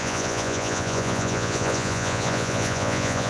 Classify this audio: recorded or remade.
remade